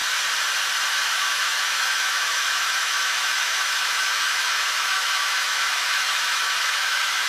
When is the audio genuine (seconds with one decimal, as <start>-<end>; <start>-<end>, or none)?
0.0-0.9